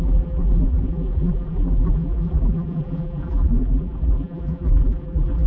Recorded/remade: remade